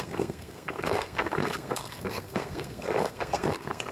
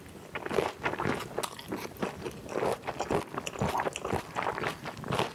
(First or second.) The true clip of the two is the second